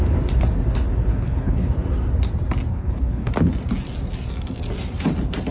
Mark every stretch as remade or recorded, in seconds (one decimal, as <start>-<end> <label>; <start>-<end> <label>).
0.0-1.1 recorded; 1.1-1.7 remade; 1.7-2.7 recorded; 2.7-3.3 remade; 3.3-5.5 recorded